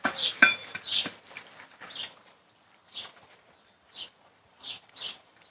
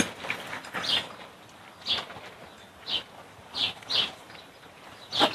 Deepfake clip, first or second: first